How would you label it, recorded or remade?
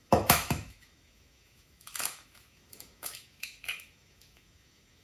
remade